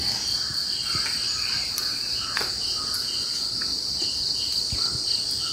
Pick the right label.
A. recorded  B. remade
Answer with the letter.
A